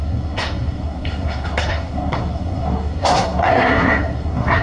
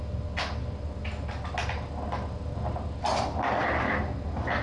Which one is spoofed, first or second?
first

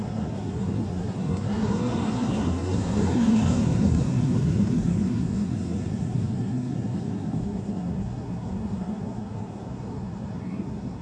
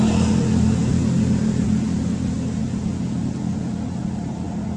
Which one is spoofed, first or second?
first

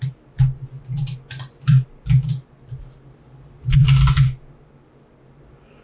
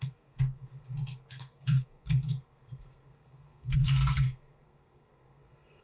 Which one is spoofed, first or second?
second